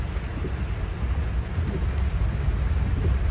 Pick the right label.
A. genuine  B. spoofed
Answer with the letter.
A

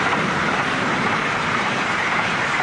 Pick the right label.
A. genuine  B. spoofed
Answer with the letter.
B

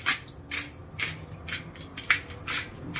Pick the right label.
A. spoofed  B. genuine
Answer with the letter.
B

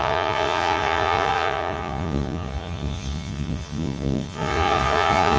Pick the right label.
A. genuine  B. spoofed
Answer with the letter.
B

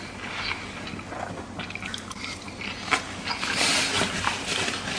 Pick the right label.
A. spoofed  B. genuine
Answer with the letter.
B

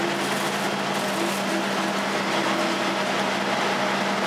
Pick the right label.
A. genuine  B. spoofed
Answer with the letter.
A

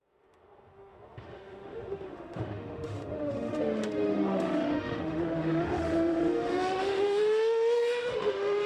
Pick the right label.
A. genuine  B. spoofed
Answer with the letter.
B